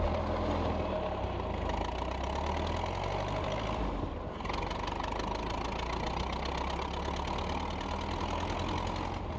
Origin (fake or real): real